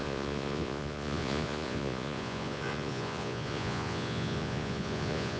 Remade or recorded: remade